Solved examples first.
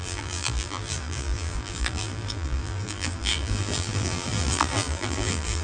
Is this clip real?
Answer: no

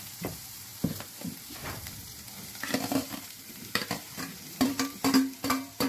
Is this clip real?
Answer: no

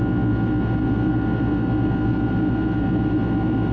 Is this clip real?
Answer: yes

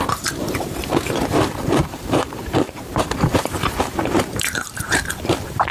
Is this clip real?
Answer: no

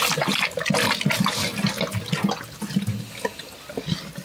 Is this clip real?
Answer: yes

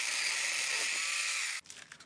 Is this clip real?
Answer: yes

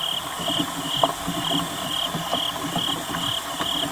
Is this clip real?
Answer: yes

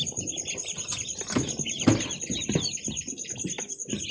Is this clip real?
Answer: yes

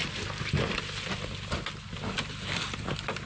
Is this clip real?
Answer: yes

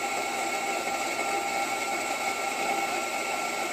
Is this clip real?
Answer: yes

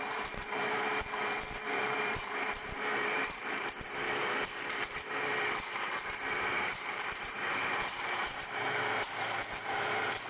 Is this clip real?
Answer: no